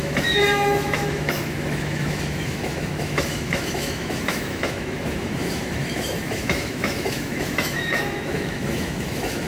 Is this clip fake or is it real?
fake